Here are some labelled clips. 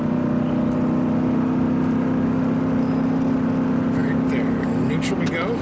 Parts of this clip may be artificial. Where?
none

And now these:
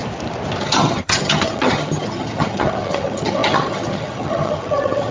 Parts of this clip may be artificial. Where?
0.6-5.1 (vocoder, HiFi-GAN)